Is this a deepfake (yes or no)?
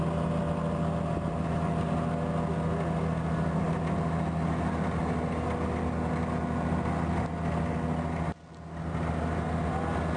no